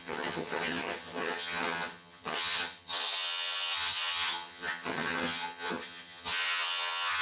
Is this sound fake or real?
fake